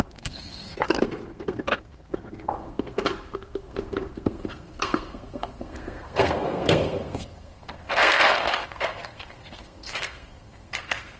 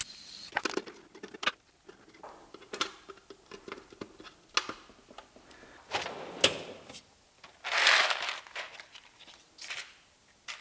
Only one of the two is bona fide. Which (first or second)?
second